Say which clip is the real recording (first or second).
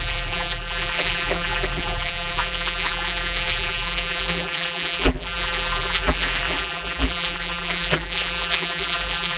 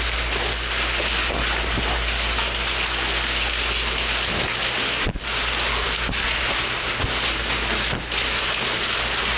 second